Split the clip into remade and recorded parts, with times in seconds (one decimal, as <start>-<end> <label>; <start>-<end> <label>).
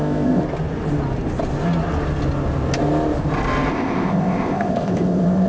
0.0-0.4 remade; 0.4-3.7 recorded; 3.7-5.5 remade